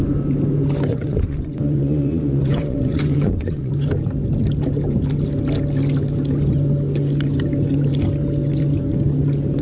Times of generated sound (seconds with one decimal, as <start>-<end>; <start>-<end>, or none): 0.9-3.7